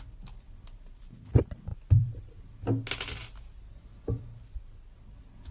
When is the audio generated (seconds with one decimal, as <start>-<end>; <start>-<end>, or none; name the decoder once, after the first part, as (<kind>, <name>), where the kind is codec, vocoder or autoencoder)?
1.7-2.4 (vocoder, BigVGAN v2); 3.9-4.6